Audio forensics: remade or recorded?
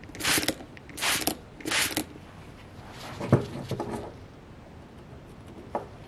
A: recorded